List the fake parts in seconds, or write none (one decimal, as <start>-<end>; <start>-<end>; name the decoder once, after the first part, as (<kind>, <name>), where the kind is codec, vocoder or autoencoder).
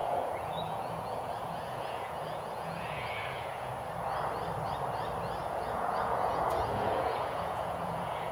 0.0-3.7 (vocoder, Vocos); 5.4-8.3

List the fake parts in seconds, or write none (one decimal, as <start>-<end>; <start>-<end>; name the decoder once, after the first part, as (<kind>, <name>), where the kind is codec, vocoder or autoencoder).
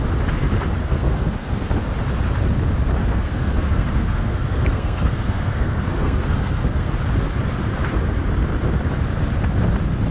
0.8-1.7 (codec, SNAC); 3.0-6.9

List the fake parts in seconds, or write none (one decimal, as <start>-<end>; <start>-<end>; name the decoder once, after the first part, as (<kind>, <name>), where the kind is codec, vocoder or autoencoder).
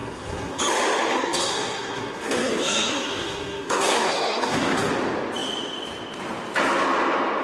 0.0-0.6 (codec, SNAC); 1.1-4.9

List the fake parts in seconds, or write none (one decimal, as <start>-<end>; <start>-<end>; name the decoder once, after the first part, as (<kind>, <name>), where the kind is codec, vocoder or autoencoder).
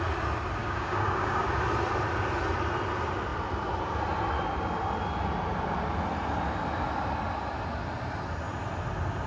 0.6-1.5 (codec, DAC)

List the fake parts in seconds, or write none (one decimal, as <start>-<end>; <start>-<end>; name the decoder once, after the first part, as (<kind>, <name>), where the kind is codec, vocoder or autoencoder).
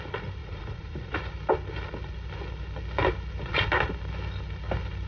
0.4-1.2 (vocoder, Vocos)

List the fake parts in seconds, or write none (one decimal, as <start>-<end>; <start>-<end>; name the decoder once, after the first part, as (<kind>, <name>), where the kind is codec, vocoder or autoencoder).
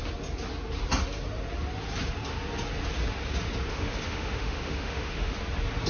3.7-5.4 (autoencoder, DAC-VAE)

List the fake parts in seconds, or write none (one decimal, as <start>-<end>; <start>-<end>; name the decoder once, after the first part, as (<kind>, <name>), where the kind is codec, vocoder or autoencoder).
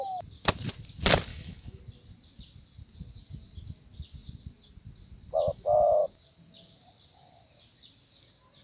1.3-1.8 (autoencoder, DAC-VAE); 5.5-6.0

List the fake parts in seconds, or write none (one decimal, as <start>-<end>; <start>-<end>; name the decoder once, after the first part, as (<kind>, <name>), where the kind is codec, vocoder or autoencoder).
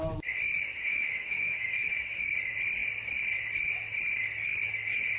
0.7-2.3 (autoencoder, DAC-VAE)